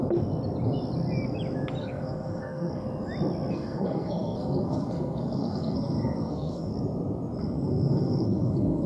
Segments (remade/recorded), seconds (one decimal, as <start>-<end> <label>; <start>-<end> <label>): 0.0-1.8 recorded; 1.8-2.8 remade; 2.8-3.5 recorded; 3.5-6.7 remade; 6.7-7.4 recorded; 7.4-8.9 remade